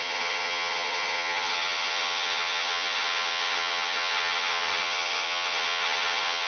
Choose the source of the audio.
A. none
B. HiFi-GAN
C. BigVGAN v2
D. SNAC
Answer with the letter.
B